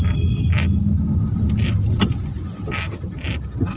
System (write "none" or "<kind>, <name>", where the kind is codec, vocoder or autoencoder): none